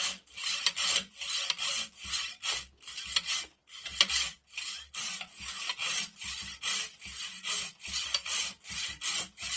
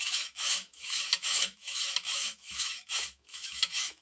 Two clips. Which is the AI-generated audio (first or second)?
second